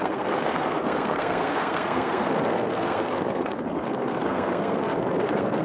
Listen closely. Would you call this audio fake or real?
fake